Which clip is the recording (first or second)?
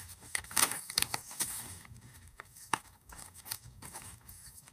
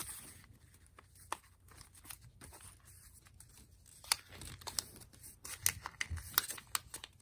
second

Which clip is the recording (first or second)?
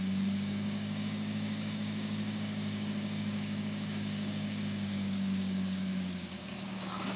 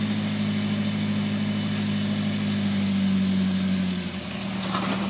second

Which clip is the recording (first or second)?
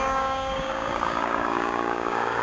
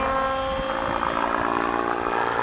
second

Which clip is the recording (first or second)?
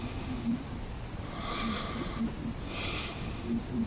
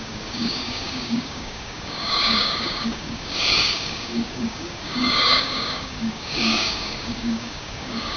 first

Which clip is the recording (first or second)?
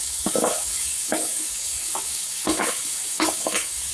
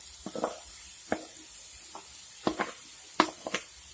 second